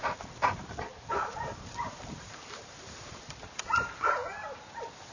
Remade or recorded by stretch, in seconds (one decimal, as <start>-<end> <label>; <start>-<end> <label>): 0.0-0.9 recorded; 0.9-3.3 remade; 3.3-5.1 recorded

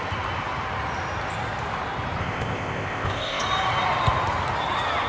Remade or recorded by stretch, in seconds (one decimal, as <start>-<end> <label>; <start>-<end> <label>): 0.0-2.2 recorded; 2.2-3.4 remade; 3.4-5.1 recorded

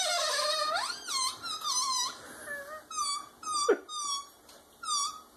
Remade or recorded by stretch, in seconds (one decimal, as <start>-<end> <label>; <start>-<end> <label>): 0.0-5.4 recorded

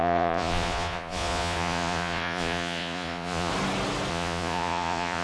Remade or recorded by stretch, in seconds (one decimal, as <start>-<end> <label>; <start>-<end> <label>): 0.0-3.5 remade; 3.5-4.1 recorded; 4.1-5.2 remade